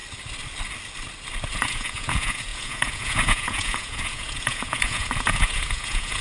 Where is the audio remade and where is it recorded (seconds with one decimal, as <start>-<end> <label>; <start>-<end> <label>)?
0.0-1.5 recorded; 1.5-6.2 remade

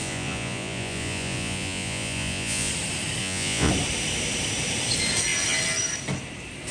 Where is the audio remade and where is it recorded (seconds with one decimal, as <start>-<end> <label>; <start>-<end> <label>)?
0.0-2.7 remade; 2.7-3.2 recorded; 3.2-3.7 remade; 3.7-6.7 recorded

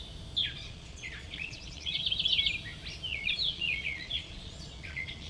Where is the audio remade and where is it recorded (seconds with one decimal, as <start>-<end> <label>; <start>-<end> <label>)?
0.0-0.4 recorded; 0.4-2.0 remade; 2.0-3.1 recorded; 3.1-5.3 remade

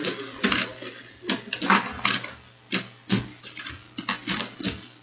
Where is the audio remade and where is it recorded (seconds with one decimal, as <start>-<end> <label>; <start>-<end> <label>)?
0.0-5.0 recorded

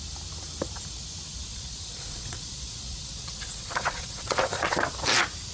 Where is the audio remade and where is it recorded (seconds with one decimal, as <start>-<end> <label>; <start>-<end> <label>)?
0.0-1.5 recorded; 1.5-4.8 remade; 4.8-5.5 recorded

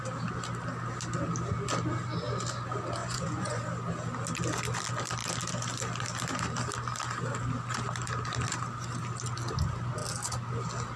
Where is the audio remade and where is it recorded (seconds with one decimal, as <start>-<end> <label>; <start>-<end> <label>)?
0.0-3.0 recorded; 3.0-3.6 remade; 3.6-11.0 recorded

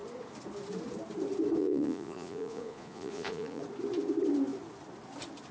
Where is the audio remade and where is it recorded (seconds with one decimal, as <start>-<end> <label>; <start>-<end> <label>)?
0.0-1.6 recorded; 1.6-3.6 remade; 3.6-5.5 recorded